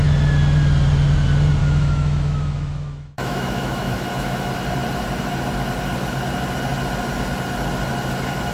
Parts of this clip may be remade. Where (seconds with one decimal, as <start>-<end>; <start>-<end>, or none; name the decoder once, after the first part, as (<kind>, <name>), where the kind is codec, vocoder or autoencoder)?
1.6-4.5 (autoencoder, DAC-VAE)